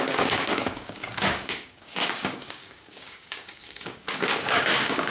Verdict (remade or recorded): remade